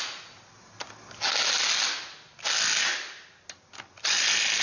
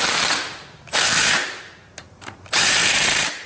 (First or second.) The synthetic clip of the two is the second